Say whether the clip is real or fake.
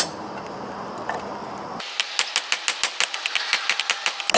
real